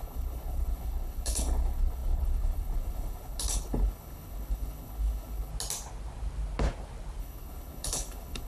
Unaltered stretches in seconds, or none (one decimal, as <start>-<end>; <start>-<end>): 5.5-7.2